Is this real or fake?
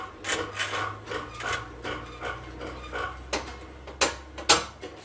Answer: real